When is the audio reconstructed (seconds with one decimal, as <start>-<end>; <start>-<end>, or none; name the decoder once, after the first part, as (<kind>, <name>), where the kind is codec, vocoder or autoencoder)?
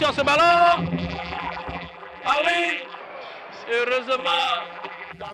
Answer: 0.5-3.0 (vocoder, BigVGAN v2); 4.2-5.3